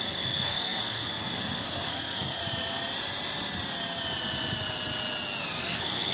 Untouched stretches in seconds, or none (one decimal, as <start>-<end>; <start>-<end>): 2.4-5.6